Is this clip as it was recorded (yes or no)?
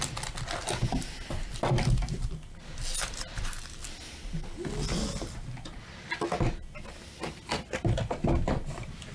yes